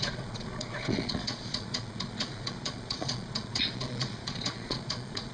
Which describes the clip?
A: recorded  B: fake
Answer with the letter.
B